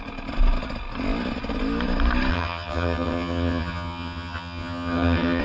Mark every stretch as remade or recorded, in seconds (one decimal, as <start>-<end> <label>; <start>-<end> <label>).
0.0-2.3 recorded; 2.3-5.4 remade